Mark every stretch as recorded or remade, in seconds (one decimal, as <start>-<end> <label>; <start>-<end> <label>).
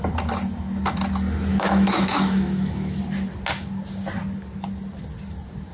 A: 0.0-1.5 recorded; 1.5-3.0 remade; 3.0-5.7 recorded